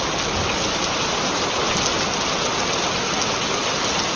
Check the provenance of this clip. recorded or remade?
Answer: recorded